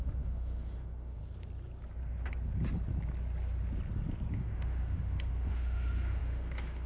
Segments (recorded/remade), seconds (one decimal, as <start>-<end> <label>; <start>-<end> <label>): 0.0-1.2 remade; 1.2-4.3 recorded; 4.3-6.9 remade